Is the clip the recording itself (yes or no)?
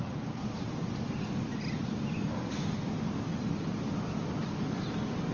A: yes